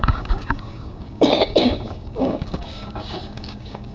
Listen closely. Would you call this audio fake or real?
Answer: fake